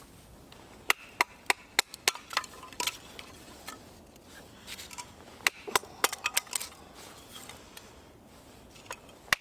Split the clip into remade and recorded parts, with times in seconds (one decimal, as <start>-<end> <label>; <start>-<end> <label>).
0.0-9.4 recorded